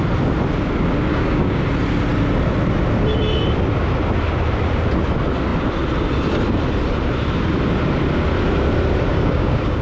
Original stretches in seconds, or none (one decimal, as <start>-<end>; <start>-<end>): 0.0-1.1; 1.6-9.1